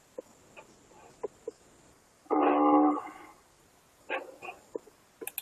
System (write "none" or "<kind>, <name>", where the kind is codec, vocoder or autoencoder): none